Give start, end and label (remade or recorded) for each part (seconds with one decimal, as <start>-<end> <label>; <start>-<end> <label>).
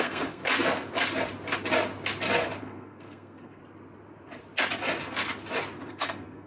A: 0.0-0.4 remade; 0.4-2.6 recorded; 2.6-3.6 remade; 3.6-5.9 recorded; 5.9-6.5 remade